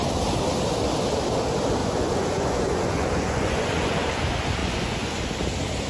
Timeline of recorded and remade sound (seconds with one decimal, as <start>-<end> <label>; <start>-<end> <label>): 0.0-1.8 recorded; 1.8-4.1 remade; 4.1-4.6 recorded; 4.6-5.2 remade; 5.2-5.9 recorded